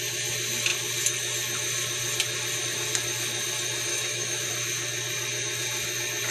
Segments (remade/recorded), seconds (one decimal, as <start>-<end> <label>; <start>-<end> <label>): 0.0-3.9 recorded; 3.9-4.5 remade; 4.5-6.3 recorded